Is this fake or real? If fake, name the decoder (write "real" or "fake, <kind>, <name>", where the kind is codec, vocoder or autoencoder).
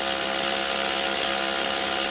real